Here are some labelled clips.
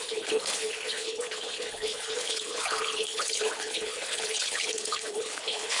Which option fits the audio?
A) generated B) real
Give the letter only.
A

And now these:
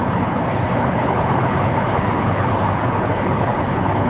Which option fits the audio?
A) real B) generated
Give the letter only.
B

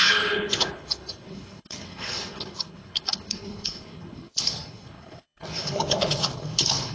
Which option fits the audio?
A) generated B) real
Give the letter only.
A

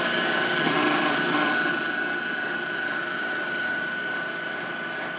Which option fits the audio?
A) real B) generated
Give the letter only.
A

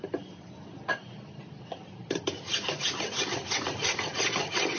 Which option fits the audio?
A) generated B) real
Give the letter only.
B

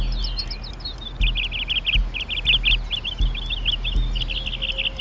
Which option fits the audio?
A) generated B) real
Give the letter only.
B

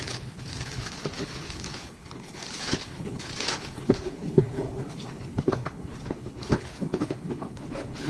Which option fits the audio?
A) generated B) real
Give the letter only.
A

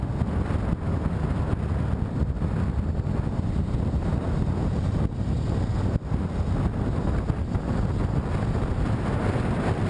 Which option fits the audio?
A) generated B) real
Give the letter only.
B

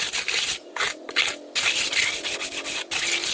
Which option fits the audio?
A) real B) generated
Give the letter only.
A